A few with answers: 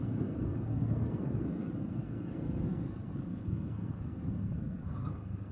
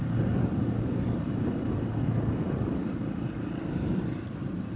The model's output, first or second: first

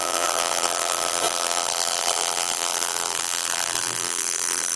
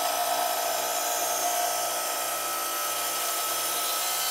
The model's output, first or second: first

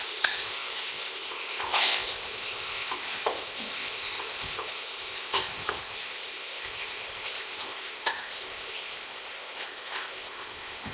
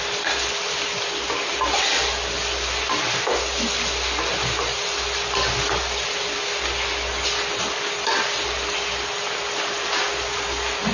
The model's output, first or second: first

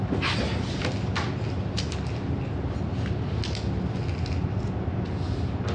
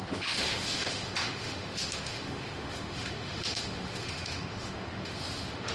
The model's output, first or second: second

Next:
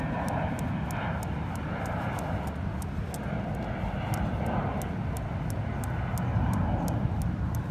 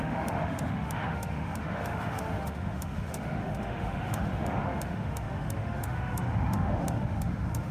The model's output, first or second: second